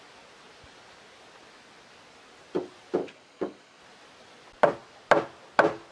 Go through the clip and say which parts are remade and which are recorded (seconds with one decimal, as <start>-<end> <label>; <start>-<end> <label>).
0.0-3.0 recorded; 3.0-3.8 remade; 3.8-5.9 recorded